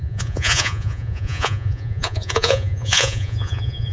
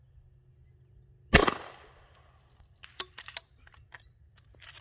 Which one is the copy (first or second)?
first